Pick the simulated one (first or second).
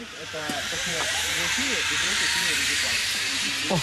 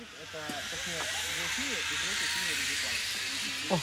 first